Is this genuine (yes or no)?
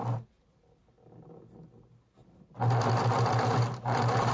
yes